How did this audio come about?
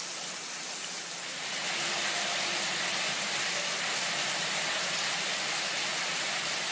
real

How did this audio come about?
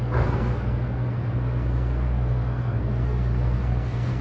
fake